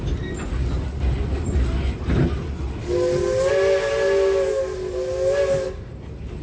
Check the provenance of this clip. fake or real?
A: real